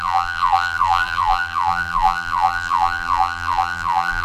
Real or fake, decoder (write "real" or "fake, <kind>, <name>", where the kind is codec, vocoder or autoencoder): fake, vocoder, BigVGAN v2